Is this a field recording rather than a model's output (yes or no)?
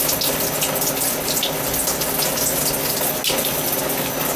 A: yes